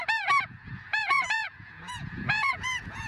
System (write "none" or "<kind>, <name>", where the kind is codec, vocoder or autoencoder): vocoder, Vocos